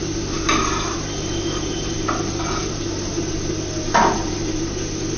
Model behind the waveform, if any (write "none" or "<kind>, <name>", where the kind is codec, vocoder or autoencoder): none